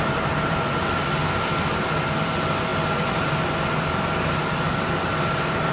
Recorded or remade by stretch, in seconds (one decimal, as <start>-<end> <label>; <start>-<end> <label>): 0.0-5.7 recorded